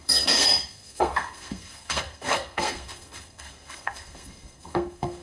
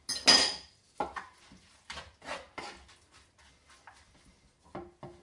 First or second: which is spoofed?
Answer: first